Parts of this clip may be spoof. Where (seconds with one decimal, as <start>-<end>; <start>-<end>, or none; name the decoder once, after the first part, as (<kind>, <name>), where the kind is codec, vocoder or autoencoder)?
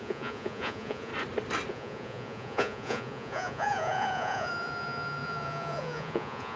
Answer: 0.0-1.1 (vocoder, Vocos); 1.7-6.6